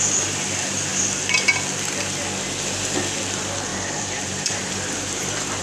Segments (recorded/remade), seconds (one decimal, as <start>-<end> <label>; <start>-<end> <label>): 0.0-3.7 recorded; 3.7-5.6 remade